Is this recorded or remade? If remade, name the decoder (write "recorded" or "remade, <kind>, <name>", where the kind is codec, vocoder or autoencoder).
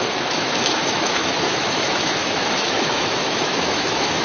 remade, autoencoder, DAC-VAE